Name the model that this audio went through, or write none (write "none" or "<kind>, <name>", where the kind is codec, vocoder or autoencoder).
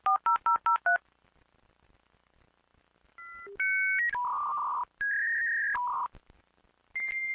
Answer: none